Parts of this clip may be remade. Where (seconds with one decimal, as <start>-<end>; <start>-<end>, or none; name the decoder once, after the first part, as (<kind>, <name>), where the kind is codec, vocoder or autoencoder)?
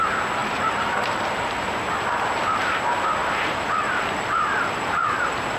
0.4-1.9 (vocoder, BigVGAN v2); 3.2-5.6